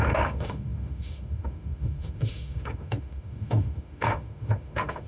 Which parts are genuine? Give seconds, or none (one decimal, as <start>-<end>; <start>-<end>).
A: none